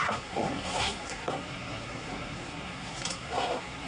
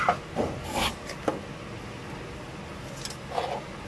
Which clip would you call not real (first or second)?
first